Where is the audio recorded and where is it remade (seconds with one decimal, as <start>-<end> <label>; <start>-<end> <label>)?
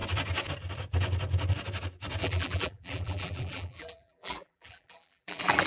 0.0-2.2 recorded; 2.2-5.7 remade